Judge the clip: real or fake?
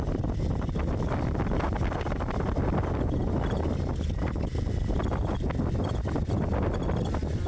real